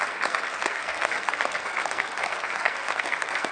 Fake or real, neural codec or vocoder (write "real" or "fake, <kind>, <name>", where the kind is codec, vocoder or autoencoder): fake, codec, SNAC